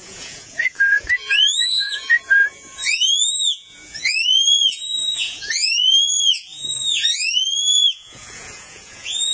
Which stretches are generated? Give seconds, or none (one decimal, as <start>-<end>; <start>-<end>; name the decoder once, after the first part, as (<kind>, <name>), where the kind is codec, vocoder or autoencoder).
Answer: 0.0-9.3 (vocoder, Vocos)